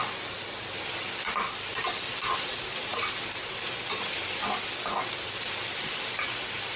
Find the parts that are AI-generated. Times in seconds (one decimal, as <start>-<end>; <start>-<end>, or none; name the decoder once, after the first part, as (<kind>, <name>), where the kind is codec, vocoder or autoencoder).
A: 2.9-4.4 (vocoder, BigVGAN v2)